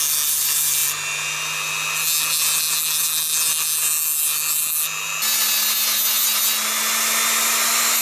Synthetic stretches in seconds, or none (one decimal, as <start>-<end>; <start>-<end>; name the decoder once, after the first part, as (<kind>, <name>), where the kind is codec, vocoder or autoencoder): none